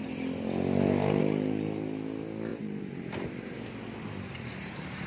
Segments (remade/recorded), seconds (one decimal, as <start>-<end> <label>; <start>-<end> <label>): 0.0-2.5 recorded; 2.5-3.7 remade; 3.7-5.1 recorded